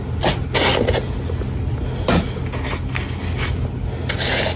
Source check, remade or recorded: recorded